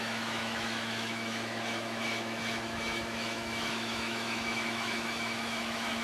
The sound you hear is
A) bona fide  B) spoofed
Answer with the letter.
B